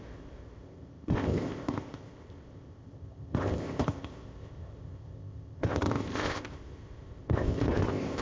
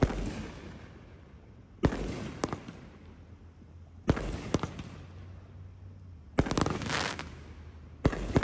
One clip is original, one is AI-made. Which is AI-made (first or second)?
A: first